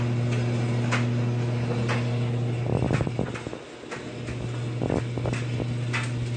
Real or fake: real